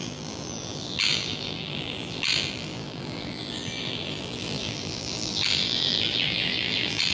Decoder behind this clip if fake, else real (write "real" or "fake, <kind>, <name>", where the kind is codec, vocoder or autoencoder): fake, vocoder, BigVGAN v2